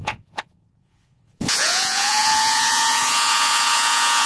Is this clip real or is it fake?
fake